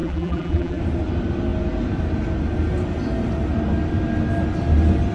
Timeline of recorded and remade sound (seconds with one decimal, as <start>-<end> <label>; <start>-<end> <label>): 0.0-0.8 remade; 0.8-5.1 recorded